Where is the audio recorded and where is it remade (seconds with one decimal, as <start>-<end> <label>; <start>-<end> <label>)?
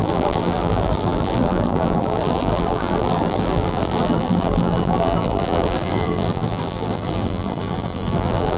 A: 0.0-8.6 remade